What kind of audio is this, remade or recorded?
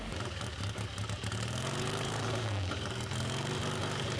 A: remade